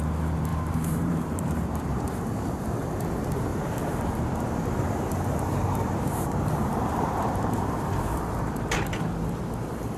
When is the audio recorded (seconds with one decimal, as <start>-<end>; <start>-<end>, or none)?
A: 0.0-0.5; 2.6-3.5; 8.6-10.0